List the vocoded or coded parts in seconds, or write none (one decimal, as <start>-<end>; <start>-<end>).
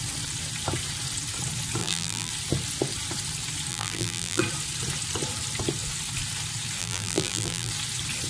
1.8-2.3; 3.7-4.4; 6.8-7.7